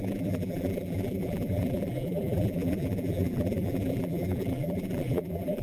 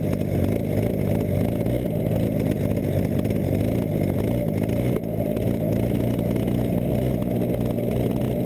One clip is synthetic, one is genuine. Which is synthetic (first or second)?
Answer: first